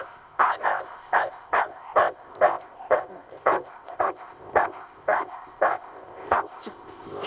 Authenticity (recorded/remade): remade